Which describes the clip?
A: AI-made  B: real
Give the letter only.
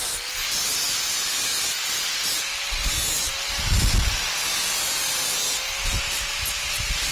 B